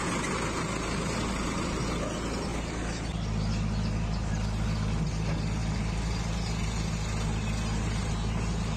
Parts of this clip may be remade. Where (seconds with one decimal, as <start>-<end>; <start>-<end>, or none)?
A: none